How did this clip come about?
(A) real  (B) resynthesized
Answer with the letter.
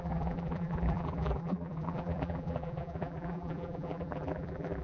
B